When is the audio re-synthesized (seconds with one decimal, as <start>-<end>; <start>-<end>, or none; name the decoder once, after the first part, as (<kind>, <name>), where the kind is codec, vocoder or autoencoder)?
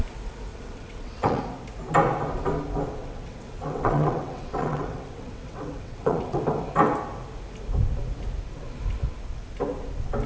0.5-1.4 (vocoder, WaveNeXt); 3.0-6.4